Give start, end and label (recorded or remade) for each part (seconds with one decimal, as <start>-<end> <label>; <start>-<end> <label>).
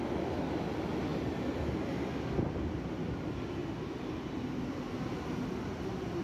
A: 0.0-6.2 recorded